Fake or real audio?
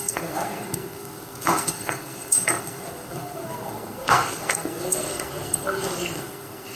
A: fake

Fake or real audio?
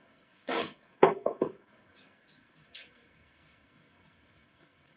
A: fake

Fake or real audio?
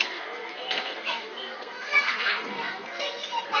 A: fake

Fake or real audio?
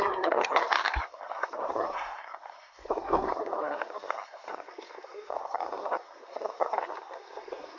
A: fake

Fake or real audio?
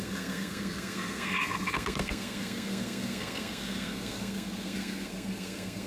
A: fake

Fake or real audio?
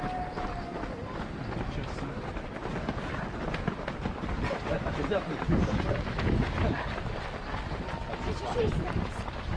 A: real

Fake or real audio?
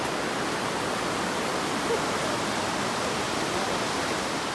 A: real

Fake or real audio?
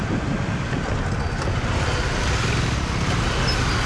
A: real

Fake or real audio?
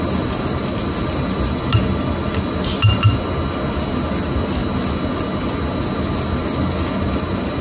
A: real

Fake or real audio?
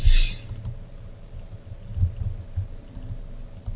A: real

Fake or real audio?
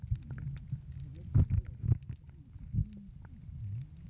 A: real